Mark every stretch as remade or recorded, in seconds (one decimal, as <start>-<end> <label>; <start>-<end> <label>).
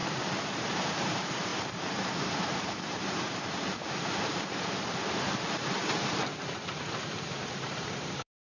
0.0-8.6 remade